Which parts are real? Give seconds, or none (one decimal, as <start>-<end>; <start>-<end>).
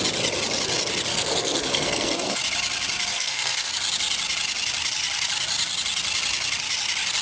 0.0-1.1; 2.4-3.1; 3.7-7.2